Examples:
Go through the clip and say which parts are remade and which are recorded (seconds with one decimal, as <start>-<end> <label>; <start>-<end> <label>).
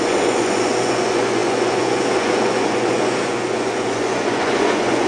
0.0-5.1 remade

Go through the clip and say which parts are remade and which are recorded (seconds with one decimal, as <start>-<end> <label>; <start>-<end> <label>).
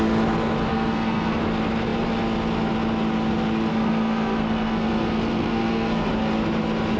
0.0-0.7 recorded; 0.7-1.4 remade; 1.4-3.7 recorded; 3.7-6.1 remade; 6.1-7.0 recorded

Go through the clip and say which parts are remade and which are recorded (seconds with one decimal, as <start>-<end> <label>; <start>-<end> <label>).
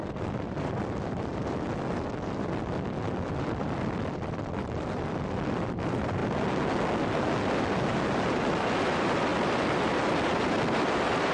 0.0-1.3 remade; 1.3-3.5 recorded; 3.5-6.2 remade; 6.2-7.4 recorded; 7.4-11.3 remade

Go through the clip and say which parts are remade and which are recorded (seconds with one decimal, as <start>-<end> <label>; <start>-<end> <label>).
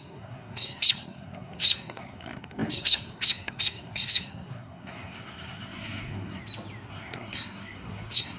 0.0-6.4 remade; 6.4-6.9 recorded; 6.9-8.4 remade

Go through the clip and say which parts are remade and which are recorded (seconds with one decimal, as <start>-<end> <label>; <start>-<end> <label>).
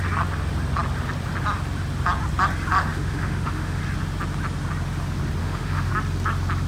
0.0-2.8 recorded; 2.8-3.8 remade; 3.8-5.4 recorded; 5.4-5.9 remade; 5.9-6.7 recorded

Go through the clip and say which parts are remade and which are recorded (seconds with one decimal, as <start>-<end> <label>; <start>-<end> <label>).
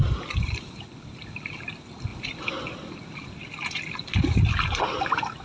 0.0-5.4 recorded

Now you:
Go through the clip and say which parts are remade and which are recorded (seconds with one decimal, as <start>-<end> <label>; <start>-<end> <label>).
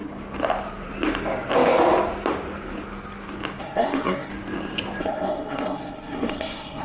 0.0-3.6 recorded; 3.6-4.3 remade; 4.3-5.0 recorded; 5.0-6.8 remade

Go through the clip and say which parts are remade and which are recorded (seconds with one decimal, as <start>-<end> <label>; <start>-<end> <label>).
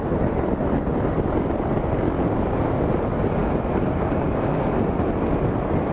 0.0-5.9 recorded